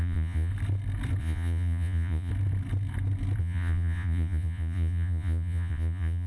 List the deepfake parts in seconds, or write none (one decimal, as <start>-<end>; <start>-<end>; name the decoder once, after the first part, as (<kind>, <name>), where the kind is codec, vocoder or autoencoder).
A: 0.0-0.5 (vocoder, Vocos); 1.2-2.3; 3.4-6.3